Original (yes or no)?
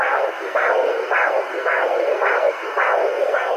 no